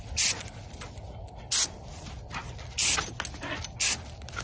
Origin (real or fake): real